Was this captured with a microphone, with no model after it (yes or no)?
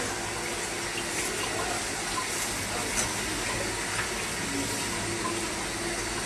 yes